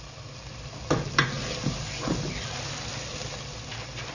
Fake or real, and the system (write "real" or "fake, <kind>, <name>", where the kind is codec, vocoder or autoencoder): real